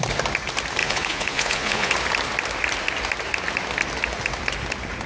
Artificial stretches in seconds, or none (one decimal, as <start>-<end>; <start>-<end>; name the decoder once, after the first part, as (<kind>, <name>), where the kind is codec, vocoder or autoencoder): 0.8-1.9 (vocoder, Vocos)